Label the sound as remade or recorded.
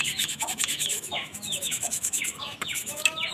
remade